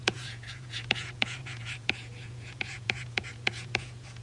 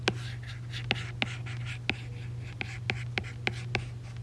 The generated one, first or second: first